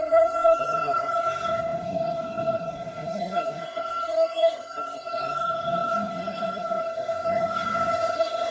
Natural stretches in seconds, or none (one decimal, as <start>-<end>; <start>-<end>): none